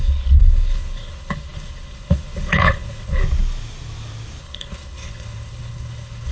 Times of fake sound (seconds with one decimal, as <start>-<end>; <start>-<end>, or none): 0.0-3.2; 4.4-6.3